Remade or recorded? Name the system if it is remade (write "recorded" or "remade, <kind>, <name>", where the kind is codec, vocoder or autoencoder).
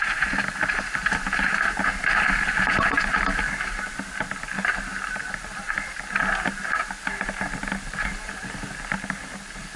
recorded